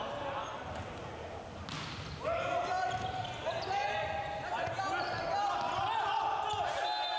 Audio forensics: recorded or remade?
recorded